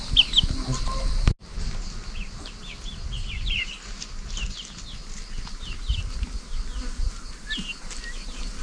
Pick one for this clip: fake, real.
real